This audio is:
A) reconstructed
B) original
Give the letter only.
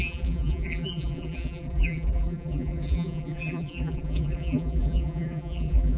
A